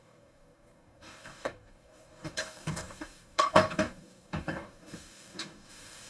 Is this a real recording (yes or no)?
no